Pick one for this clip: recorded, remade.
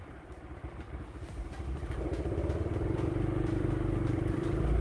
remade